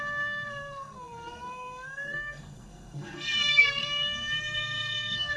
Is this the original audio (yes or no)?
no